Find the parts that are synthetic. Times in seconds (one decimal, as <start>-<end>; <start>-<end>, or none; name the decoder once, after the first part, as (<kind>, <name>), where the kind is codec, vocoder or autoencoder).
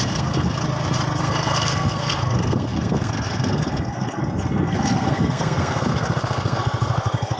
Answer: 0.0-0.6 (codec, SNAC); 1.2-7.4